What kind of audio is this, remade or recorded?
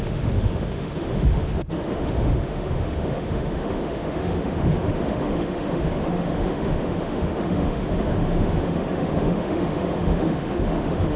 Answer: remade